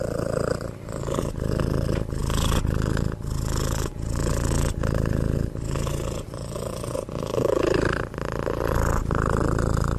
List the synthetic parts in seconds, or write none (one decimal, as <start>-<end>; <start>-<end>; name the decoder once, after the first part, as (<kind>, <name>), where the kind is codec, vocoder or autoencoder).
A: none